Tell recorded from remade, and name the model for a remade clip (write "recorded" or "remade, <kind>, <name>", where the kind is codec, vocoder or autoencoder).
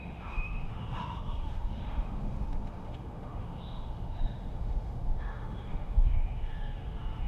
remade, autoencoder, DAC-VAE